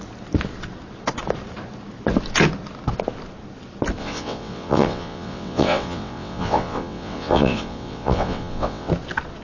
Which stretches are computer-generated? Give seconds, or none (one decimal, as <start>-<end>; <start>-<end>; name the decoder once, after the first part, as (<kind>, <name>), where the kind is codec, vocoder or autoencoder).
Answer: 4.0-8.9 (vocoder, WaveNeXt)